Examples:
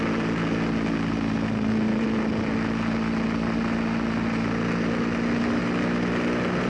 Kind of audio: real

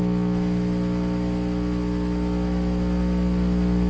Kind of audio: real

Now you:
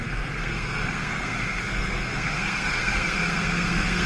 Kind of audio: fake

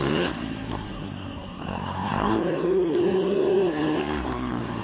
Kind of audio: fake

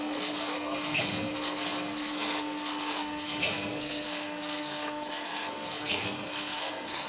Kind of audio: fake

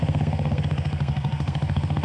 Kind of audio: fake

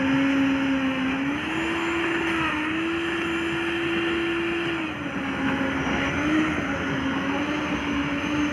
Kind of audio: real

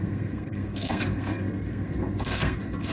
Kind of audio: fake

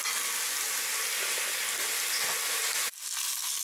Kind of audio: real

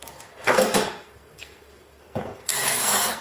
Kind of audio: fake